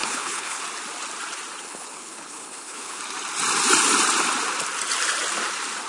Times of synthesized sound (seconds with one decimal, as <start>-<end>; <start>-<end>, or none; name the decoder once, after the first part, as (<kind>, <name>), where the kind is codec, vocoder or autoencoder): 0.0-0.6 (codec, HILCodec); 1.6-3.0